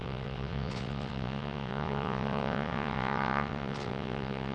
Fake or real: fake